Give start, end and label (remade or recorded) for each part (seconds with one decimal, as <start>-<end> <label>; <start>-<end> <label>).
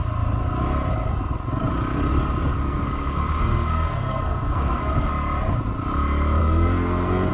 0.0-2.5 recorded; 2.5-5.1 remade; 5.1-6.4 recorded; 6.4-7.3 remade